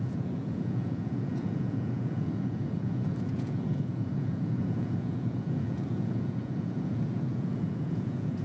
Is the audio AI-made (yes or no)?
yes